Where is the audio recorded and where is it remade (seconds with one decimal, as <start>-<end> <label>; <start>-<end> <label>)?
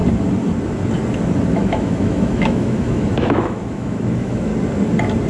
0.0-1.5 recorded; 1.5-4.5 remade; 4.5-5.3 recorded